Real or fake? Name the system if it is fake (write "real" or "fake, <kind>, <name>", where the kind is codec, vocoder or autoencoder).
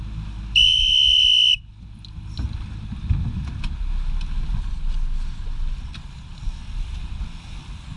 real